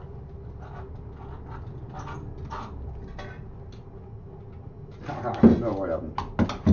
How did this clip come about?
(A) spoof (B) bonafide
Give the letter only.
B